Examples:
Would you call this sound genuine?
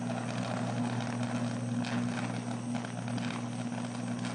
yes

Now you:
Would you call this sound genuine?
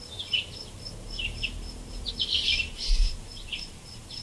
yes